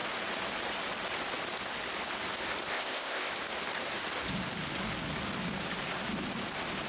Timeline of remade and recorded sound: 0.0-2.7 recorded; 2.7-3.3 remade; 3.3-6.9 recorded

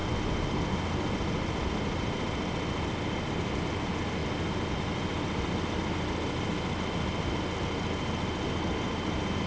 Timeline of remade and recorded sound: 0.0-9.5 recorded

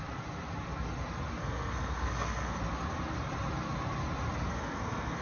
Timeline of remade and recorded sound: 0.0-1.4 recorded; 1.4-2.6 remade; 2.6-4.5 recorded; 4.5-5.2 remade

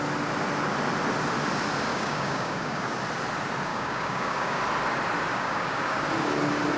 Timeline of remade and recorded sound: 0.0-1.9 recorded; 1.9-2.9 remade; 2.9-3.7 recorded; 3.7-4.6 remade; 4.6-5.3 recorded; 5.3-6.0 remade; 6.0-6.8 recorded

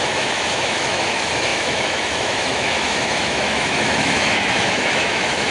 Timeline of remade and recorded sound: 0.0-5.5 remade

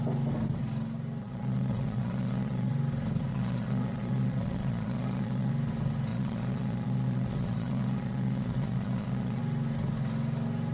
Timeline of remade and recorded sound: 0.0-1.2 recorded; 1.2-2.7 remade; 2.7-3.3 recorded; 3.3-5.5 remade; 5.5-6.1 recorded; 6.1-9.4 remade; 9.4-10.7 recorded